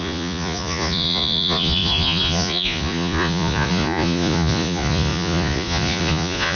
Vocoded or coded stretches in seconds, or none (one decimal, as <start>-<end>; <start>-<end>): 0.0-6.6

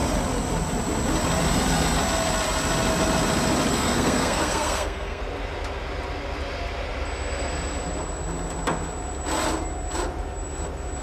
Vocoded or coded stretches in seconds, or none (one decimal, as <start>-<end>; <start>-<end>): 3.7-5.2

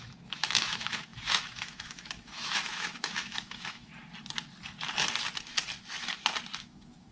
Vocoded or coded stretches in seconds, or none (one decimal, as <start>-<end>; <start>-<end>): 0.0-3.9; 6.6-7.1

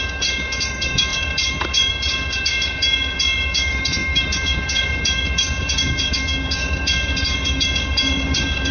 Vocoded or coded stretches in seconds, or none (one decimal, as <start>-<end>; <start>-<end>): 0.0-8.7

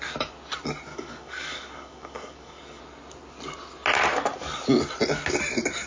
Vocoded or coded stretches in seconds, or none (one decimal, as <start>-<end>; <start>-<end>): 0.9-2.8

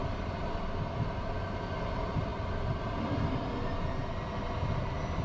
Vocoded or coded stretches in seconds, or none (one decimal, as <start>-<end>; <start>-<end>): 0.0-1.1